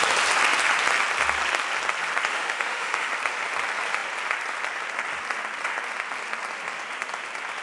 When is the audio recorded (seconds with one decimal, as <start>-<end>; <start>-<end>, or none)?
0.0-2.3; 3.1-7.6